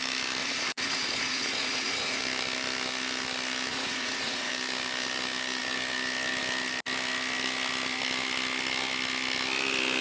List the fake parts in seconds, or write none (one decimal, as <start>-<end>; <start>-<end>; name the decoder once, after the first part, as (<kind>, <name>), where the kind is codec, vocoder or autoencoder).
0.4-2.2 (vocoder, Vocos); 3.7-4.5